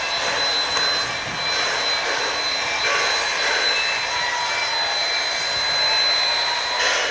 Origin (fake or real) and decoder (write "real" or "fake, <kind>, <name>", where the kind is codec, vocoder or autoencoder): real